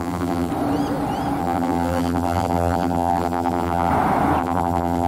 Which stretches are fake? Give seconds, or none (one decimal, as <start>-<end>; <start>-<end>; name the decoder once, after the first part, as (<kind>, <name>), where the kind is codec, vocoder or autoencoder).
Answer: 0.0-0.5 (vocoder, BigVGAN v2); 1.4-3.9; 4.4-5.1